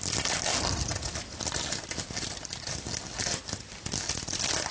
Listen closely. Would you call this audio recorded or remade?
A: recorded